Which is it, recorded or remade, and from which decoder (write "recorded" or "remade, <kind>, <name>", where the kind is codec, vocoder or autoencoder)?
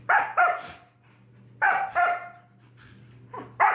recorded